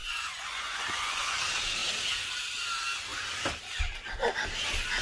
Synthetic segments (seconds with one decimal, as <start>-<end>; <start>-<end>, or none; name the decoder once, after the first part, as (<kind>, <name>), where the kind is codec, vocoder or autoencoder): 0.0-1.4 (vocoder, Vocos)